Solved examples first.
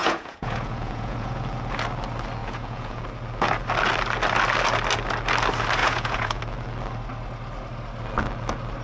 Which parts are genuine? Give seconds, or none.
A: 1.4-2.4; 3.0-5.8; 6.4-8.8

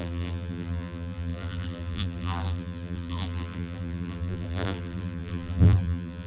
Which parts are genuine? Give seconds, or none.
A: none

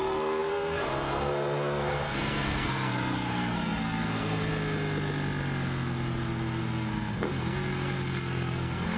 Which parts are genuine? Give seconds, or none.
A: 4.5-6.6